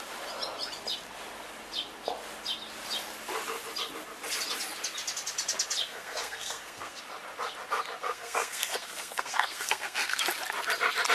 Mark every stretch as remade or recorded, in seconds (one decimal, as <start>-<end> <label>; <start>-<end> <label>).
0.0-5.9 recorded; 5.9-7.0 remade; 7.0-8.0 recorded; 8.0-10.2 remade; 10.2-11.1 recorded

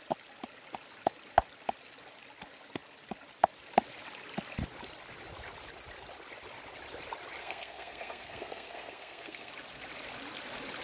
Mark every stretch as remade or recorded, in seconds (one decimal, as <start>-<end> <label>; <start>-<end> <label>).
0.0-7.4 recorded; 7.4-9.5 remade; 9.5-10.8 recorded